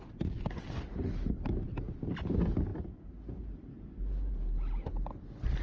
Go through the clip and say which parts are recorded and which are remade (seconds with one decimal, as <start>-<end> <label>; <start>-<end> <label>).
0.0-5.6 recorded